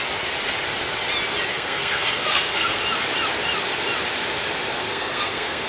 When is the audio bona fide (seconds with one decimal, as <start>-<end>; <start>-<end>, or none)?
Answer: 0.0-1.5; 2.8-4.8